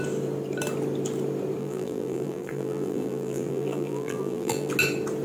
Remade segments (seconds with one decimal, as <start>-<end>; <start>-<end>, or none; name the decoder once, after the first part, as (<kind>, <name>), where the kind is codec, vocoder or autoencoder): 1.6-4.7 (vocoder, BigVGAN v2)